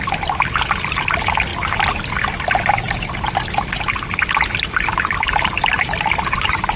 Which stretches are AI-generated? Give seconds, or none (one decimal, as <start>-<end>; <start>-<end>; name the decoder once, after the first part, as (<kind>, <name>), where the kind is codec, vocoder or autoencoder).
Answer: none